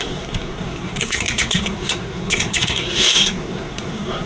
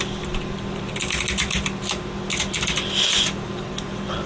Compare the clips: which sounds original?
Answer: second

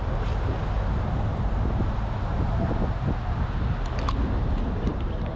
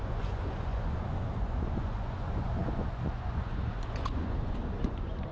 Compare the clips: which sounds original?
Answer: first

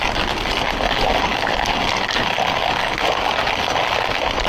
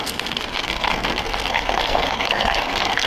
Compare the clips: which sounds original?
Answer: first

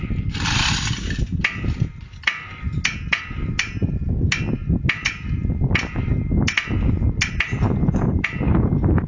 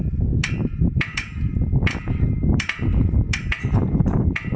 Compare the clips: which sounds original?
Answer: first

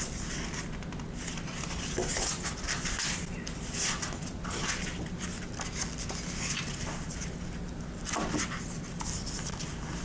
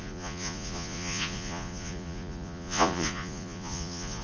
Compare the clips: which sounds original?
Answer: first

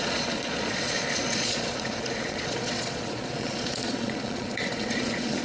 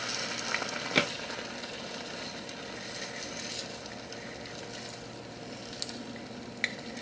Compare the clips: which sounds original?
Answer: second